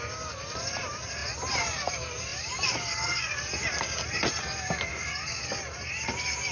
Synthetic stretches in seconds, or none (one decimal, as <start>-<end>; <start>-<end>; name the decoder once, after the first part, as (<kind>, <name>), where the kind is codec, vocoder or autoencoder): 4.9-5.5 (codec, DAC)